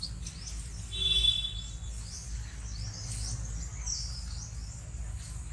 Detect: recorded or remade recorded